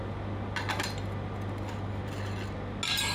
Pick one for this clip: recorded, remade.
recorded